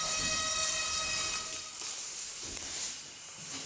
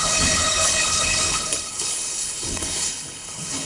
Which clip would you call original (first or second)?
first